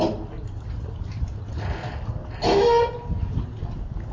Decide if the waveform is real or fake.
real